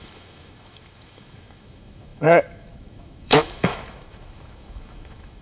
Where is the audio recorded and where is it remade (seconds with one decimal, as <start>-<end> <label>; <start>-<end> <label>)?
0.0-5.4 remade